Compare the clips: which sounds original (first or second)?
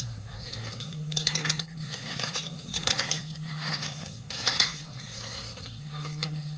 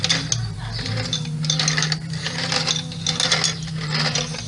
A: second